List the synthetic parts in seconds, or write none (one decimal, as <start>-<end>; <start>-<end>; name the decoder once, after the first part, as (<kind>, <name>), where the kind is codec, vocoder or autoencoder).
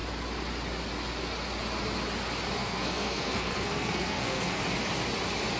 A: 2.6-4.6 (codec, SNAC)